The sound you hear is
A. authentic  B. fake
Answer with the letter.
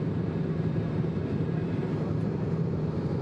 B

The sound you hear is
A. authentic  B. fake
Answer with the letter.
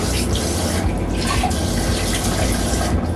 A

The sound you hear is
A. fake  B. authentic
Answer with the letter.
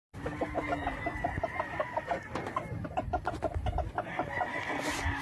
B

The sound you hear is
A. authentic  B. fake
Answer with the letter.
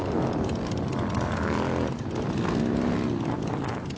A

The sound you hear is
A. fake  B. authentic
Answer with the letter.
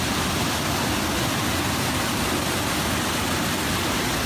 B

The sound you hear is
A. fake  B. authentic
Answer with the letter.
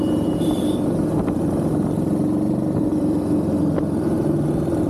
B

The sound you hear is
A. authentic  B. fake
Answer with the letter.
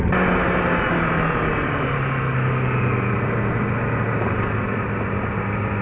A